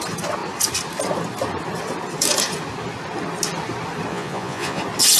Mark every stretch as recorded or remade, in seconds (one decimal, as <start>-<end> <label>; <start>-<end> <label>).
0.0-4.1 recorded; 4.1-4.8 remade; 4.8-5.2 recorded